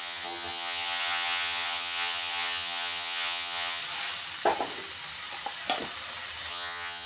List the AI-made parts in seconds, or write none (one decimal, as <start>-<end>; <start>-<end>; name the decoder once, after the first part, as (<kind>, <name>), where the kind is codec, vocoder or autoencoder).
0.0-3.8 (vocoder, HiFi-GAN); 6.5-7.1

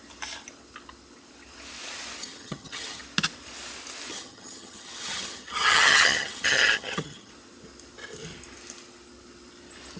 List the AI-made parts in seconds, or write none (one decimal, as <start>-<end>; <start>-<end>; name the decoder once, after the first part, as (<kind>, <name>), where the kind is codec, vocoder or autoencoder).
2.2-3.0 (vocoder, HiFi-GAN); 4.1-7.3